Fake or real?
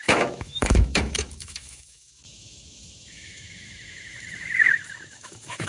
fake